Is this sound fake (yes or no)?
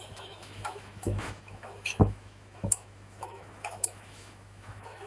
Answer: yes